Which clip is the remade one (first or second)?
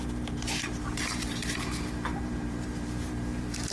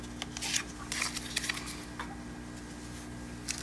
first